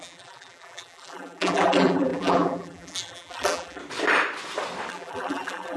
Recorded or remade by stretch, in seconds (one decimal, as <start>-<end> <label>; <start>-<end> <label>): 0.0-3.8 remade; 3.8-4.9 recorded; 4.9-5.8 remade